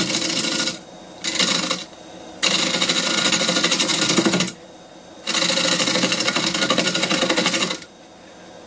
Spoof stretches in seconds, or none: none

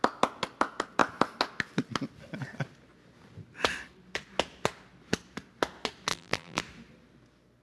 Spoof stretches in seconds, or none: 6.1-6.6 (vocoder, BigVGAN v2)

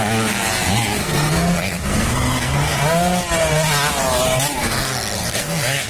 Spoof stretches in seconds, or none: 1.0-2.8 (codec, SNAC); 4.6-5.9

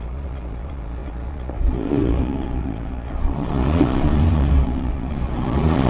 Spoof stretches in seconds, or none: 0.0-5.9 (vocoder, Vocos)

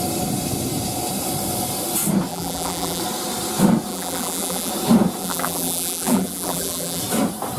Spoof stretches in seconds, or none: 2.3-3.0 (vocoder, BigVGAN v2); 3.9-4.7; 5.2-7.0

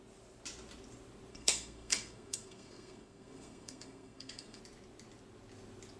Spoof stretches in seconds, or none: 1.3-4.6 (codec, SNAC)